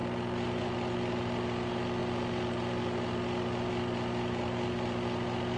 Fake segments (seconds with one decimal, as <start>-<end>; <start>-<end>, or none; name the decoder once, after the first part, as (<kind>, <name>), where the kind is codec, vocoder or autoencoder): none